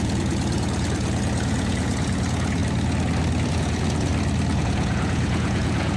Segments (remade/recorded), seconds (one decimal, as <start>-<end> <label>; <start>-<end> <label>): 0.0-2.6 remade; 2.6-3.5 recorded; 3.5-4.1 remade; 4.1-4.6 recorded; 4.6-6.0 remade